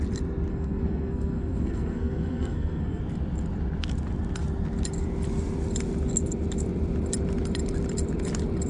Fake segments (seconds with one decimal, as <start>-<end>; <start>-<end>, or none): 0.5-3.0